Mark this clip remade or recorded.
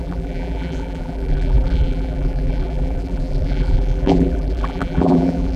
remade